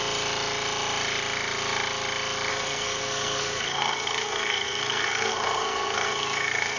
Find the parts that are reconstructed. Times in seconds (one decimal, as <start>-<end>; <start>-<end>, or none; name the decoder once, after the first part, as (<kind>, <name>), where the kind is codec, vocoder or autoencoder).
2.5-6.8 (codec, SNAC)